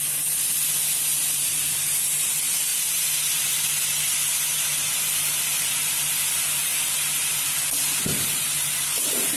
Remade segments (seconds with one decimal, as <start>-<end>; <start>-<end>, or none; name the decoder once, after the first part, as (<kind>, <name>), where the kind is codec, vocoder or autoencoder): 1.1-1.7 (vocoder, BigVGAN v2); 6.6-7.3; 8.1-9.4